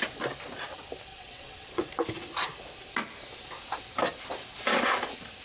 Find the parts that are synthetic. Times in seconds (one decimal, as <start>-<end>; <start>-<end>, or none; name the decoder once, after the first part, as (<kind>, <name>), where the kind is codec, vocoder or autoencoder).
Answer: 1.1-1.9 (vocoder, WaveNeXt)